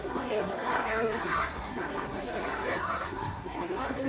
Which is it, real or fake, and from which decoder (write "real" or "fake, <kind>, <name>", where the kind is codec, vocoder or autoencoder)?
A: fake, codec, SNAC